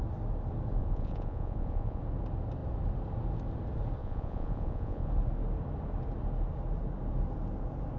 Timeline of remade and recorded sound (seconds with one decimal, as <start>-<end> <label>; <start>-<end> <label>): 0.0-0.8 recorded; 0.8-2.0 remade; 2.0-4.0 recorded; 4.0-5.1 remade; 5.1-8.0 recorded